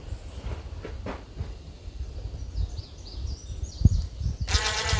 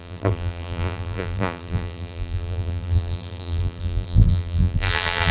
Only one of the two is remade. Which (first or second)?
second